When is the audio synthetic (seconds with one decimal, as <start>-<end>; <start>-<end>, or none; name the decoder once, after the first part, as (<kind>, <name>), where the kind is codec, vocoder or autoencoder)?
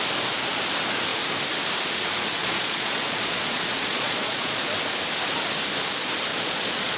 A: 2.4-4.6 (vocoder, Vocos); 6.3-7.0